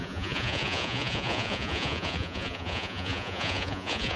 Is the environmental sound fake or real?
fake